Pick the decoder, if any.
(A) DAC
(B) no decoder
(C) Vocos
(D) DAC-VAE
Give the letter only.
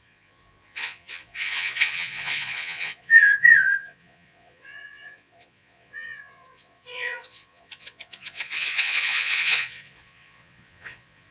C